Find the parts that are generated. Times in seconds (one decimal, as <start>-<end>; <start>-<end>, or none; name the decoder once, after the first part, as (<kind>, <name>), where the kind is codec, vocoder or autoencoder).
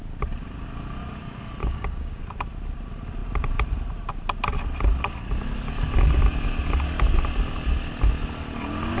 1.6-2.2 (codec, DAC)